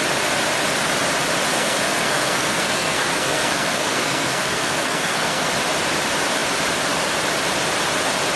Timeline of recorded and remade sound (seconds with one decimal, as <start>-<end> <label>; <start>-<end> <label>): 0.0-1.5 recorded; 1.5-5.5 remade; 5.5-8.4 recorded